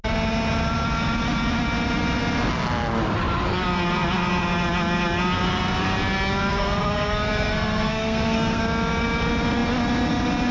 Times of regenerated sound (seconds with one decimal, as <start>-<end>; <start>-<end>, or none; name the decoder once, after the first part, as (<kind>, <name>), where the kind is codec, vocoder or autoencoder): 6.5-8.6 (codec, SNAC)